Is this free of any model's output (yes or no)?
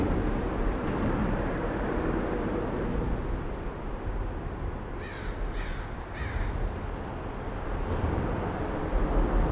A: yes